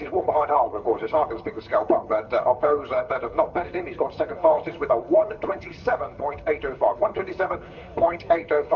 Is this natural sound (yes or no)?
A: no